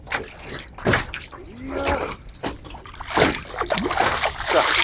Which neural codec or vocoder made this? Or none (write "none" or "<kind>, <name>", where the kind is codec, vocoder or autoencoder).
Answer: none